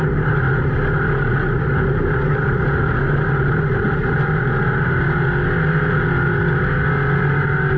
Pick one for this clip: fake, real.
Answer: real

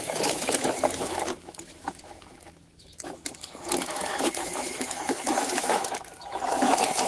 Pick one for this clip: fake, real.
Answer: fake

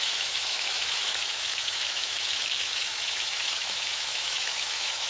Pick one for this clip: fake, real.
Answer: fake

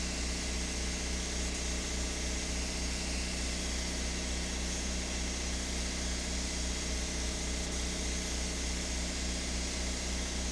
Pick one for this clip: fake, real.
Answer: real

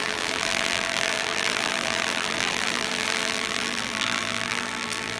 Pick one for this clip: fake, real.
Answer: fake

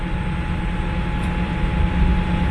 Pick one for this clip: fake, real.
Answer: real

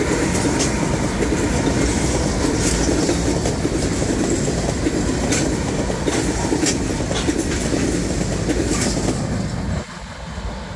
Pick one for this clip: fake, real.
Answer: real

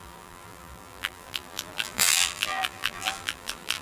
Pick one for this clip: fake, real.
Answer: fake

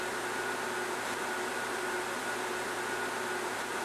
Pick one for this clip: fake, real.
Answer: real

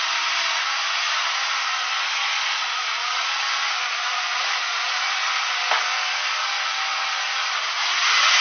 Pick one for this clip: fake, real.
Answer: real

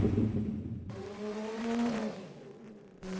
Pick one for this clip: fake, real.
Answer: fake